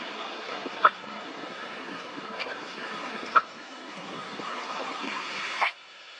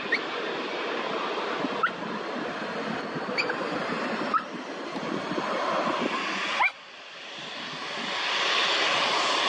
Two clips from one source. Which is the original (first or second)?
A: second